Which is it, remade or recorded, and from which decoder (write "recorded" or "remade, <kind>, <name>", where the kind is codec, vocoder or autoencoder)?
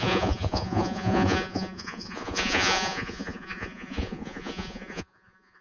remade, vocoder, Vocos